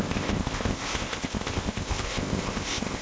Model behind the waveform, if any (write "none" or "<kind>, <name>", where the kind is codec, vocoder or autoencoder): codec, ZipCodec